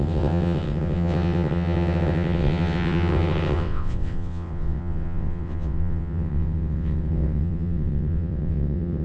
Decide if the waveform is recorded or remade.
remade